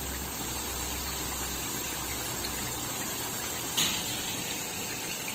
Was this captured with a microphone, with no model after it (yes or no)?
no